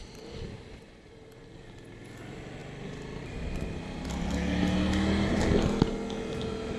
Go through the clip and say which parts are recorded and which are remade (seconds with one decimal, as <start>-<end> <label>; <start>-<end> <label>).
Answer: 0.0-6.8 recorded